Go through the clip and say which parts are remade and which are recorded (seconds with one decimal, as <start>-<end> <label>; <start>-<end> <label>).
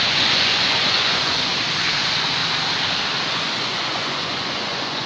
0.0-1.5 remade; 1.5-2.0 recorded; 2.0-2.4 remade; 2.4-3.3 recorded; 3.3-5.1 remade